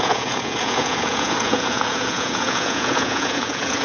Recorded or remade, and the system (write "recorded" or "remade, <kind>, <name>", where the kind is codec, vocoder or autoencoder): remade, vocoder, Vocos